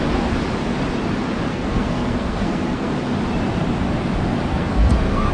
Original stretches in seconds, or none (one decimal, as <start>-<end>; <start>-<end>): 0.0-1.5; 2.9-4.5